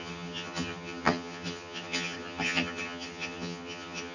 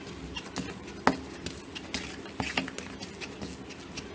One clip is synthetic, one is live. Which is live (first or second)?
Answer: second